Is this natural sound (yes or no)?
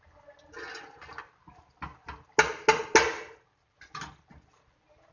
yes